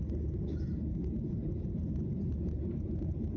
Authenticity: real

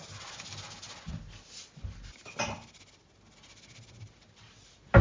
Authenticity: real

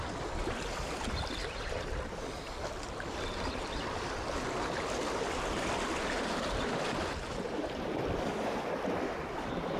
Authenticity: fake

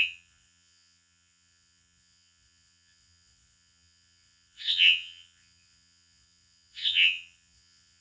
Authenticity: fake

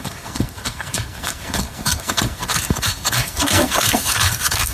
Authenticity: fake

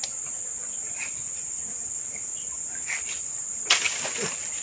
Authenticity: real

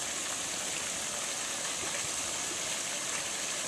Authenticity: real